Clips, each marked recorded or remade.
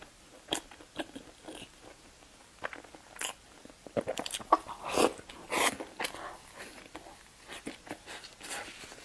recorded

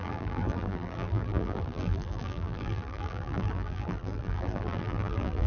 remade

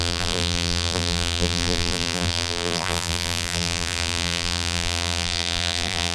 remade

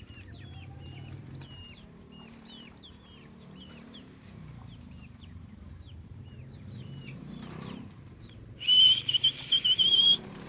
remade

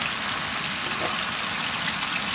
recorded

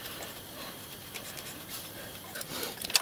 remade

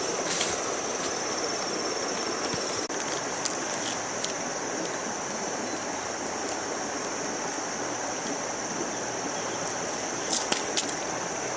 recorded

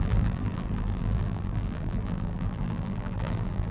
remade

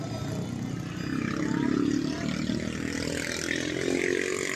recorded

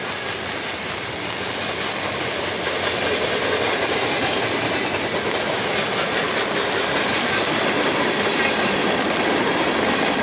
recorded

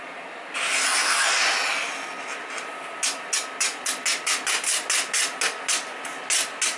recorded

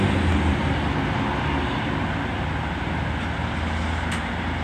recorded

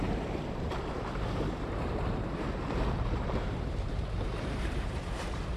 remade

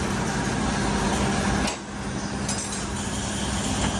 recorded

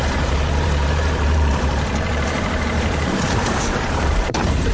remade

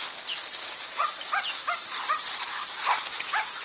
recorded